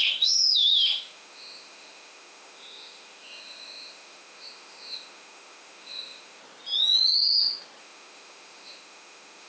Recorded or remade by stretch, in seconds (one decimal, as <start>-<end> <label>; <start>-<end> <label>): 0.0-6.4 remade; 6.4-7.8 recorded; 7.8-9.5 remade